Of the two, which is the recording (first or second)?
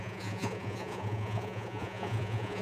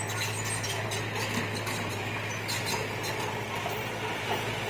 second